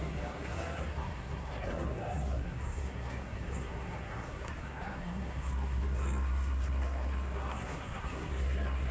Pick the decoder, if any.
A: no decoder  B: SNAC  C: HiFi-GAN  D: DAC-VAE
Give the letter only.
B